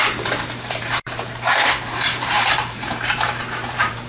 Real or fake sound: fake